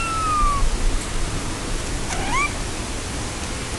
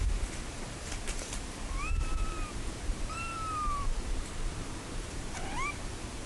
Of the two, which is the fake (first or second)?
second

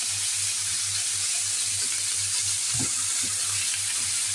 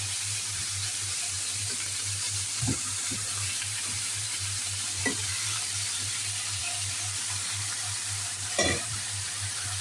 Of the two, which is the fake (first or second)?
second